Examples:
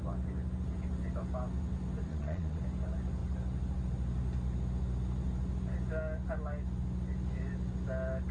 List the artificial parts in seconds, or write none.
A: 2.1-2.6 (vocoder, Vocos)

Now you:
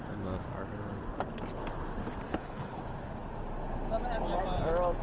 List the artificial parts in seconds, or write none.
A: 2.3-2.8 (codec, HILCodec)